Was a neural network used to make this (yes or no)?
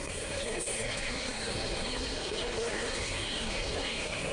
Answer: yes